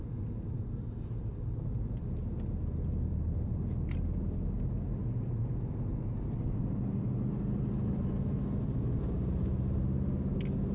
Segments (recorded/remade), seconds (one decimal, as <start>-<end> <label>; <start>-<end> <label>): 0.0-3.1 recorded; 3.1-4.2 remade; 4.2-10.7 recorded